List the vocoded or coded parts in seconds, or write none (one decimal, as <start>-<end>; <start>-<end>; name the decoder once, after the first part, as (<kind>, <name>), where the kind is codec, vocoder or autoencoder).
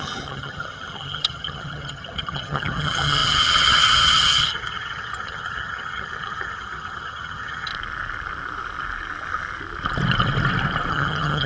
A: 0.0-7.7 (vocoder, HiFi-GAN); 10.9-11.5